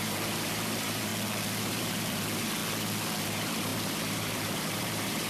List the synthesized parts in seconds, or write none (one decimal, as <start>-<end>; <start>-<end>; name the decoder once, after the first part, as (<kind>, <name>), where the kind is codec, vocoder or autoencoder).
0.0-1.1 (vocoder, BigVGAN v2); 1.6-2.6; 3.2-5.3